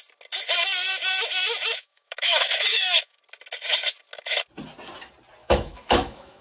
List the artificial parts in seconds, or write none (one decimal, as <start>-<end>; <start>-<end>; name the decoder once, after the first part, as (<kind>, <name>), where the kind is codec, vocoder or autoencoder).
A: 1.7-3.2 (autoencoder, DAC-VAE); 5.4-6.4